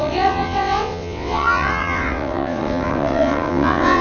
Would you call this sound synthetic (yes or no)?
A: yes